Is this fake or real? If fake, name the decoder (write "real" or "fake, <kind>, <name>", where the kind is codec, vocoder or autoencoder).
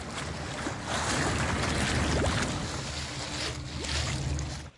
real